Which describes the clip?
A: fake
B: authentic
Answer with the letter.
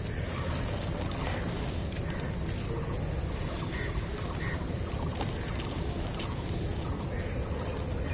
B